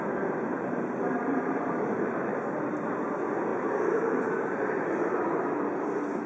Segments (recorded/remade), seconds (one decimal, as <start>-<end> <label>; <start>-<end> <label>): 0.0-0.5 recorded; 0.5-2.3 remade; 2.3-3.5 recorded; 3.5-5.6 remade; 5.6-6.3 recorded